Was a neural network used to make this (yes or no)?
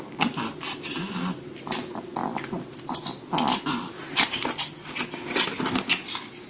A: no